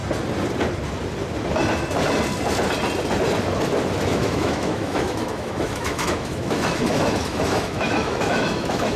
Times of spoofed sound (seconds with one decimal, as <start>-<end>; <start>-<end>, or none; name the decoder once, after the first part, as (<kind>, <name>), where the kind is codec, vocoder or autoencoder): 4.1-9.0 (autoencoder, DAC-VAE)